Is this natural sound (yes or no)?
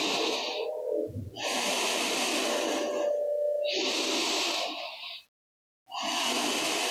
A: yes